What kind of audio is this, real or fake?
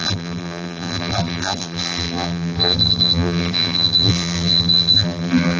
fake